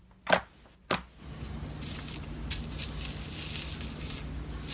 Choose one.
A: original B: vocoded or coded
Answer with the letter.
A